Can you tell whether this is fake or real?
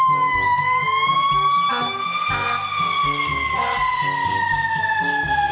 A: real